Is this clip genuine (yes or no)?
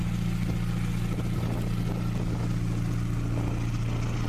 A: yes